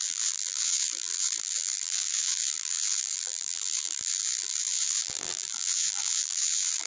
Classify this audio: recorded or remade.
remade